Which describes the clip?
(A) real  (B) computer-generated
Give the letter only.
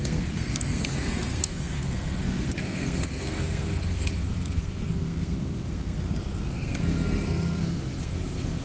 B